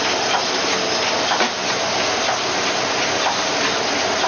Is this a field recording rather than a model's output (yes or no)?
yes